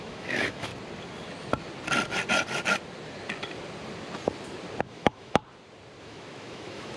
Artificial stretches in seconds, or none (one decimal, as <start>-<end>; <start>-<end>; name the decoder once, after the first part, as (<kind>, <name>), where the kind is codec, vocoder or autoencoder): 0.0-0.7 (autoencoder, DAC-VAE); 4.8-5.4; 6.0-7.0